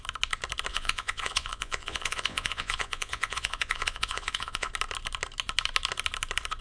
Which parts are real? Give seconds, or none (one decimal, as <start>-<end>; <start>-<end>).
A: 0.0-0.7; 4.7-6.6